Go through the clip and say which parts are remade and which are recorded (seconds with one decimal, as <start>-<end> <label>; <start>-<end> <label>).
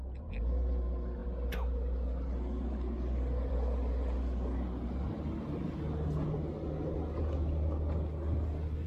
0.0-8.9 recorded